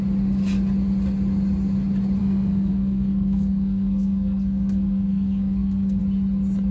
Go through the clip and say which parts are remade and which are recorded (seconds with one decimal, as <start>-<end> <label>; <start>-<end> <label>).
0.0-2.2 recorded; 2.2-6.0 remade; 6.0-6.7 recorded